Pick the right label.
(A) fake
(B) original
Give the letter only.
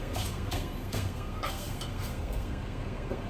A